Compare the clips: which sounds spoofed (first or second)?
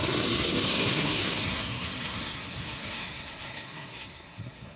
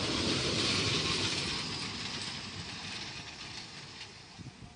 first